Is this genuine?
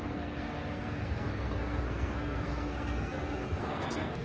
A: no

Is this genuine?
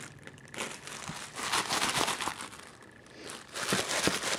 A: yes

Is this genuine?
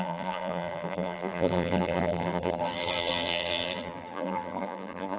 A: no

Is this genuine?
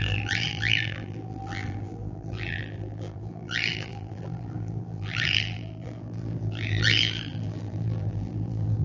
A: no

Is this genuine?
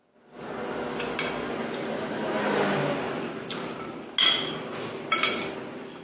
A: yes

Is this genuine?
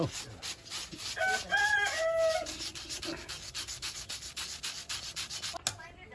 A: yes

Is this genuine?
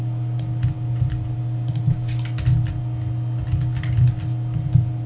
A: yes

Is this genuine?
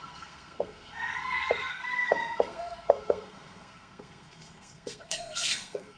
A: no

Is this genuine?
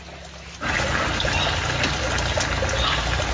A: yes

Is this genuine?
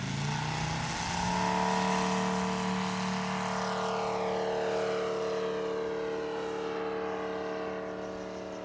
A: yes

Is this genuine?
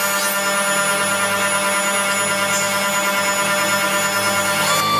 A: yes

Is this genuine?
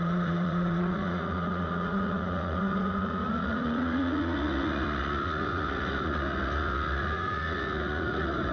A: no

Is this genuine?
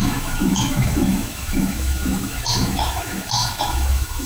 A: no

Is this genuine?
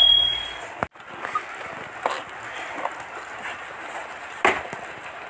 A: yes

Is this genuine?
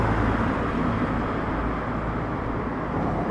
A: yes